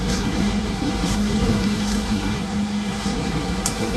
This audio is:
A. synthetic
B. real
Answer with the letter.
A